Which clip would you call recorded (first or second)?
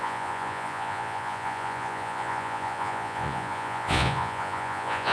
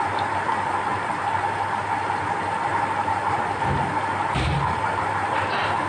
second